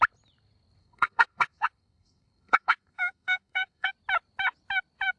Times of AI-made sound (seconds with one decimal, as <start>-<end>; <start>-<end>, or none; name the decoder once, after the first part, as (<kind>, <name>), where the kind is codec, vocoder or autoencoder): 0.8-3.9 (codec, SNAC)